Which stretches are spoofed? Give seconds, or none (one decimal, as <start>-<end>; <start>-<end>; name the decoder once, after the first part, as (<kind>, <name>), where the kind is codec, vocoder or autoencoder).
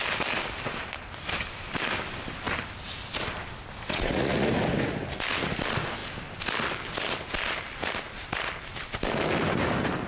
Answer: 3.9-4.5 (vocoder, Vocos)